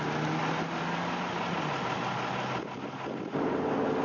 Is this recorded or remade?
recorded